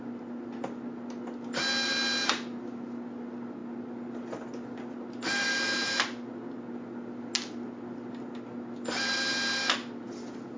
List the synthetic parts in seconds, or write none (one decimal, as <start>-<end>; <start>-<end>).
none